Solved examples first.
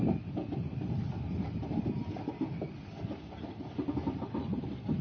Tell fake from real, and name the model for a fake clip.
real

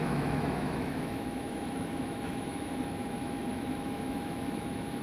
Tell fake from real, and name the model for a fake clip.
fake, autoencoder, DAC-VAE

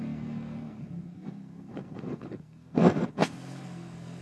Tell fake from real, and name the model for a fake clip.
fake, codec, SNAC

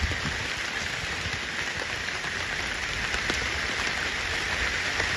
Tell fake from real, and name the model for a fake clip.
real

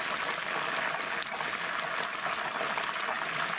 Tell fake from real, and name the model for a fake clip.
real